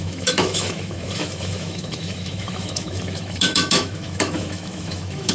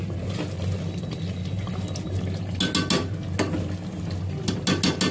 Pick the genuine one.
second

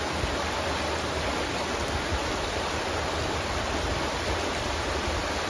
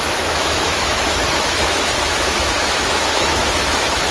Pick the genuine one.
first